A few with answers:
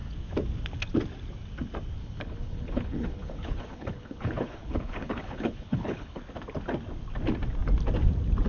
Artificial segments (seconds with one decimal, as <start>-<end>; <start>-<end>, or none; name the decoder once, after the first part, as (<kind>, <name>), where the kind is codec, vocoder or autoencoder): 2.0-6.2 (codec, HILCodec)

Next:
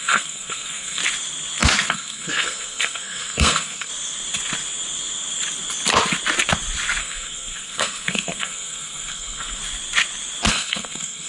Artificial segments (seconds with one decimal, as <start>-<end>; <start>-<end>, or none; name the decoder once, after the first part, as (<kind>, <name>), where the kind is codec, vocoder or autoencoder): 0.0-1.0 (codec, SNAC); 1.9-3.9; 7.0-9.6; 10.5-11.3

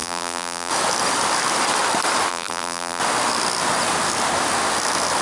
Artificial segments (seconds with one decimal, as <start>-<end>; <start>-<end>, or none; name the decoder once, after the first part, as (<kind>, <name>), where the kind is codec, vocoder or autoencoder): 0.0-0.7 (vocoder, BigVGAN v2); 2.3-3.0

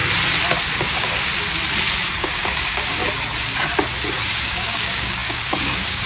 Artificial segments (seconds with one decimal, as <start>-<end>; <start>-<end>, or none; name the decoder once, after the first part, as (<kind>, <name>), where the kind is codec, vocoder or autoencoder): 0.8-1.3 (codec, DAC); 2.2-3.0; 4.4-6.1